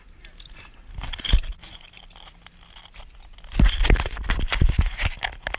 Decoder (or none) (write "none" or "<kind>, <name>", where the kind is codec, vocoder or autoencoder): none